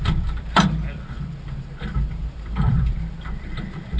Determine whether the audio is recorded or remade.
remade